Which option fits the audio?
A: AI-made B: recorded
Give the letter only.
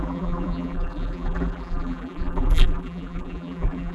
A